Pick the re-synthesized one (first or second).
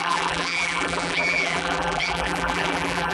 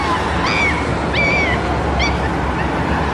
first